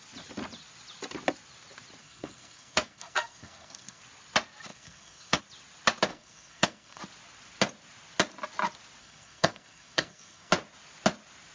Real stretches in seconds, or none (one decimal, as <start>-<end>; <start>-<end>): 0.0-2.0; 4.0-4.7; 5.4-6.1; 7.0-9.0; 10.5-11.5